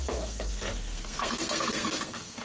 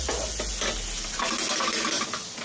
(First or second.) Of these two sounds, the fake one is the first